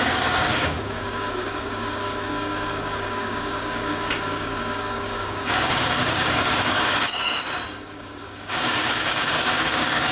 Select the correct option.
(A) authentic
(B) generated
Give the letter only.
B